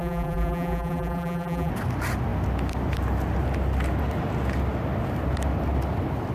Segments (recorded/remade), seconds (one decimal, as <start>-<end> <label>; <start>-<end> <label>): 0.0-1.7 remade; 1.7-6.3 recorded